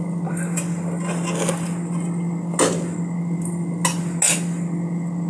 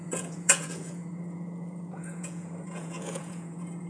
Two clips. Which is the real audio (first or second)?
first